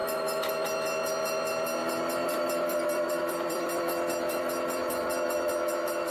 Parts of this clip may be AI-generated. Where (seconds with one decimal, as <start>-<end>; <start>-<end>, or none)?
0.0-0.5; 1.8-5.5